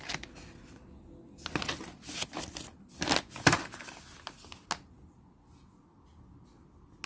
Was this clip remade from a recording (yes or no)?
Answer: no